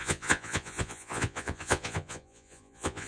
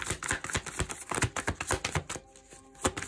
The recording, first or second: second